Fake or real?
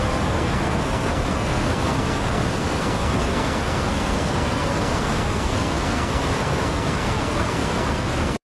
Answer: fake